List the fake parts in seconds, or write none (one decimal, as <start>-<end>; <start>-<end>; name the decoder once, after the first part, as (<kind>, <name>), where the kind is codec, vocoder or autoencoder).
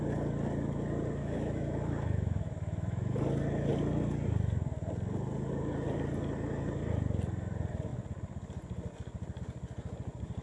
1.2-3.2 (autoencoder, DAC-VAE)